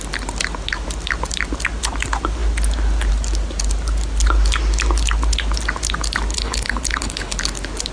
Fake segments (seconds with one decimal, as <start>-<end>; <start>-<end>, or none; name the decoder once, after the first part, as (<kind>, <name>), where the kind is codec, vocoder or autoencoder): 6.3-7.4 (codec, HILCodec)